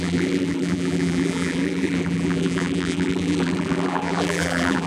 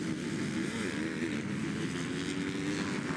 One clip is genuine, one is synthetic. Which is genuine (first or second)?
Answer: second